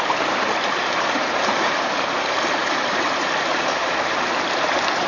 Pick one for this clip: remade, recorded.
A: remade